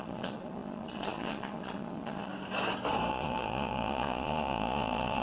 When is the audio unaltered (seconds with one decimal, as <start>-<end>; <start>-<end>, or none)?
2.3-3.1